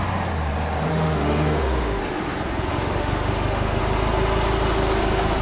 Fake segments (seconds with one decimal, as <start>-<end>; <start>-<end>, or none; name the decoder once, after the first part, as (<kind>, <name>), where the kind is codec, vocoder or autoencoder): 0.9-2.0 (autoencoder, DAC-VAE); 2.7-3.8